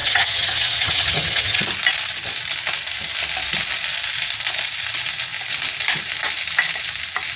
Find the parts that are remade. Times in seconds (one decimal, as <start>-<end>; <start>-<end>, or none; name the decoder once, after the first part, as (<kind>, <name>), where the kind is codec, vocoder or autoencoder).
0.0-1.6 (vocoder, HiFi-GAN)